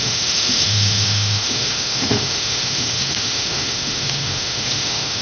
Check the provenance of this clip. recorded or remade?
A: remade